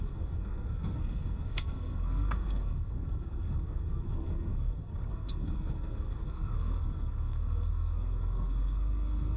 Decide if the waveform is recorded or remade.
remade